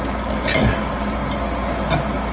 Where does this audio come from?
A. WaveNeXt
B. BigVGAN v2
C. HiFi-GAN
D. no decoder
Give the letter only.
D